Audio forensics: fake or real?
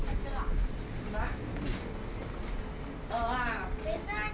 real